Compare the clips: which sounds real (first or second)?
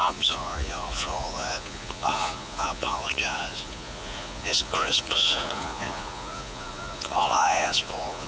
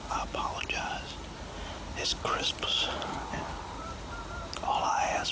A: second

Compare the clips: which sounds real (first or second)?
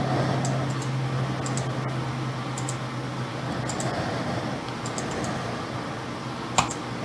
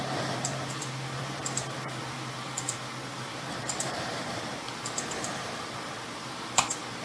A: first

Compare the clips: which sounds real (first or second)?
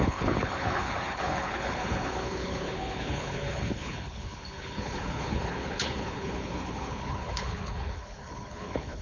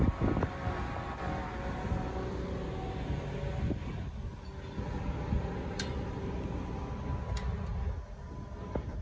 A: second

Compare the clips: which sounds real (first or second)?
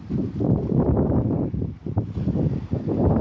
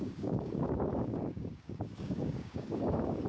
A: first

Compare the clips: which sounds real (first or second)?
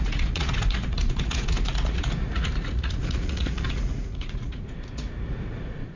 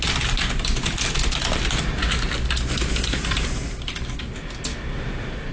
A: second